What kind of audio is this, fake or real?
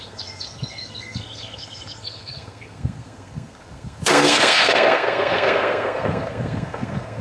fake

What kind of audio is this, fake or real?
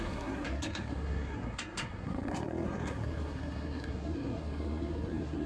fake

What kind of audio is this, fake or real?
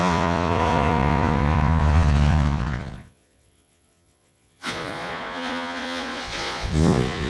fake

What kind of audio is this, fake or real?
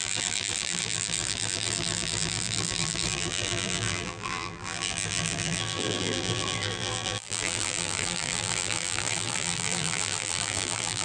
fake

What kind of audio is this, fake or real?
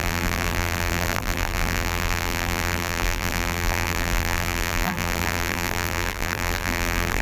fake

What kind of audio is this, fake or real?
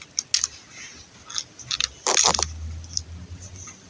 real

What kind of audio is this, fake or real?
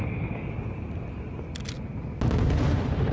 real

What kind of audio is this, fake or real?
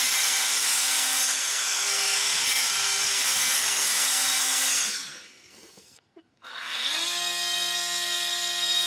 fake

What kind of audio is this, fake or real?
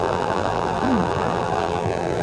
fake